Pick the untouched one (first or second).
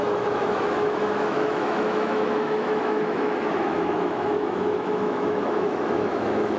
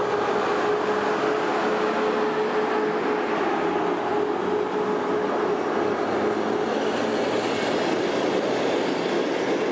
second